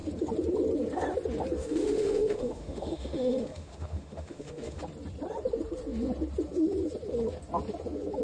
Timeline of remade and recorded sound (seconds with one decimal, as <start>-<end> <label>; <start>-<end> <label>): 0.0-1.6 recorded; 1.6-4.8 remade; 4.8-8.2 recorded